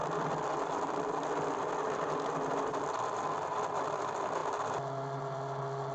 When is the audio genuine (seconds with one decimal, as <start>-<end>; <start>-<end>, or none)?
0.0-5.9